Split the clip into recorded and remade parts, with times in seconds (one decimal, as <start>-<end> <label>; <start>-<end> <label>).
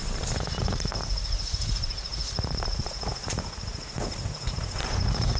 0.0-0.6 recorded; 0.6-5.4 remade